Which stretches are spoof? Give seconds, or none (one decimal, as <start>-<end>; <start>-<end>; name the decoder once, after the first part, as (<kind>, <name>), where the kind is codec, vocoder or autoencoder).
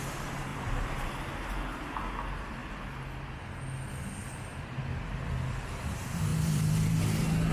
0.5-1.1 (vocoder, BigVGAN v2); 6.3-7.0